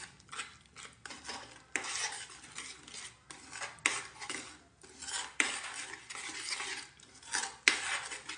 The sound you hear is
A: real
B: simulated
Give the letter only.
A